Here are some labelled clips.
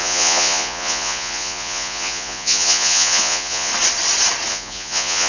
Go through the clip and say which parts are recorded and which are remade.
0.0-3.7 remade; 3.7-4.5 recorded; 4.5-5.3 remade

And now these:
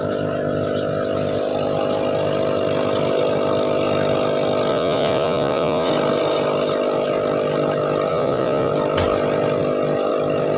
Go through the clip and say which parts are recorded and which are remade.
0.0-4.7 recorded; 4.7-5.9 remade; 5.9-8.1 recorded; 8.1-8.7 remade; 8.7-10.6 recorded

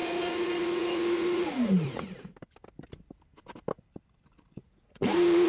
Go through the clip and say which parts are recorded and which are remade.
0.0-2.3 remade; 2.3-4.6 recorded; 4.6-5.5 remade

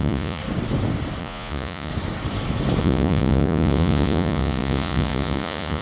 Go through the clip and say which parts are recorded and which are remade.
0.0-0.4 remade; 0.4-1.2 recorded; 1.2-1.9 remade; 1.9-2.8 recorded; 2.8-5.8 remade

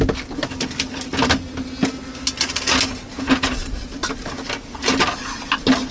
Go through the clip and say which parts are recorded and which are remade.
0.0-3.1 recorded; 3.1-3.6 remade; 3.6-5.9 recorded

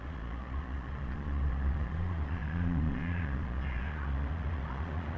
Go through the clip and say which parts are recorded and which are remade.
0.0-5.2 remade

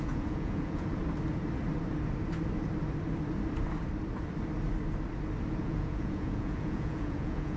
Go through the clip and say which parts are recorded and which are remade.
0.0-1.0 remade; 1.0-5.6 recorded; 5.6-7.6 remade